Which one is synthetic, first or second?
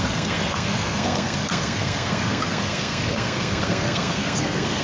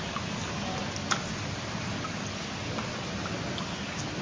first